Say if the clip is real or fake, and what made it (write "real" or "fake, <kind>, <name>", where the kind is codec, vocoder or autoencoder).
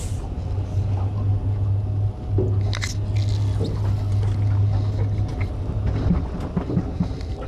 real